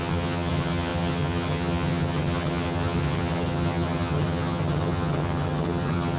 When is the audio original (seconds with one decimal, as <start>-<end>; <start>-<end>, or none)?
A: none

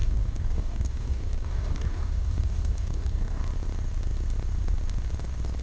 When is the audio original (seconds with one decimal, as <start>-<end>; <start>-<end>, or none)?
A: 3.4-5.6

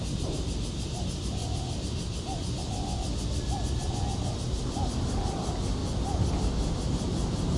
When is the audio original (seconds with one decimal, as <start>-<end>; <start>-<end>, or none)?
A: 1.4-5.3; 5.8-6.3